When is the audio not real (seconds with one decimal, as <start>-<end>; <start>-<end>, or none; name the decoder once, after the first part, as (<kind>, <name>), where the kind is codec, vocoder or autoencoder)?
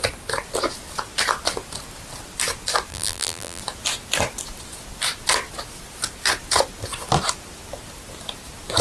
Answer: 2.9-3.6 (vocoder, BigVGAN v2)